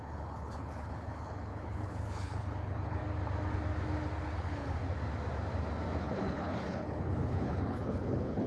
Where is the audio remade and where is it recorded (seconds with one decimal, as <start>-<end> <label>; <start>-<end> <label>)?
0.0-3.0 remade; 3.0-4.2 recorded; 4.2-4.8 remade; 4.8-6.0 recorded; 6.0-8.5 remade